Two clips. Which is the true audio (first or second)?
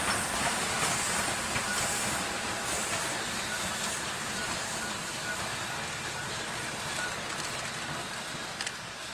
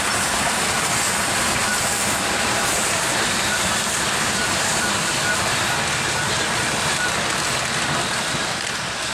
first